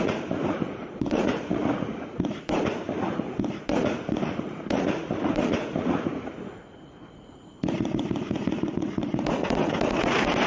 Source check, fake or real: fake